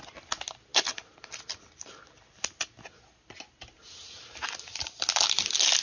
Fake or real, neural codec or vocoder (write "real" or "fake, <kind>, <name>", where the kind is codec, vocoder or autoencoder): real